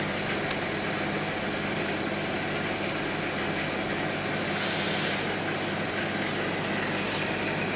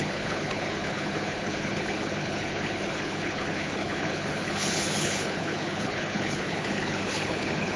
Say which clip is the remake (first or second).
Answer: second